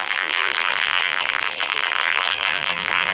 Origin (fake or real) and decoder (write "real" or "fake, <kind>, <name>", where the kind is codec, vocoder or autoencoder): fake, vocoder, BigVGAN v2